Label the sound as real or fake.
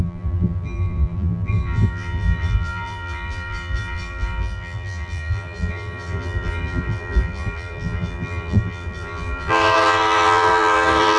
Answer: fake